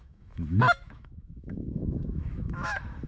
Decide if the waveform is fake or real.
fake